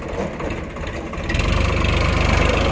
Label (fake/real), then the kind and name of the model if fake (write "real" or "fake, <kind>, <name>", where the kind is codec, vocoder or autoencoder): real